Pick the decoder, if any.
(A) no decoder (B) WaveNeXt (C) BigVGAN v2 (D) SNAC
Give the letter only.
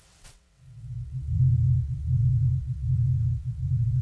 B